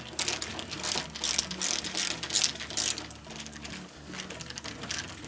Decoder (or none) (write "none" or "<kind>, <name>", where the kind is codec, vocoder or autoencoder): none